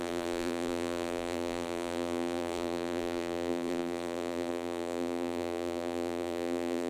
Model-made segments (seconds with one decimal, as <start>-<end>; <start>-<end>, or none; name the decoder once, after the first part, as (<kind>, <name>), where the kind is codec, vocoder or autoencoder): 0.0-6.9 (vocoder, BigVGAN v2)